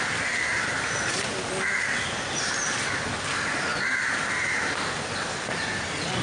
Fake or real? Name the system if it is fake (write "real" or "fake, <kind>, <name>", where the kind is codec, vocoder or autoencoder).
real